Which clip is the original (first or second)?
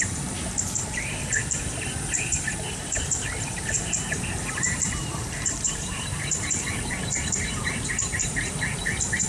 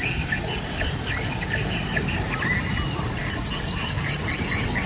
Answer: second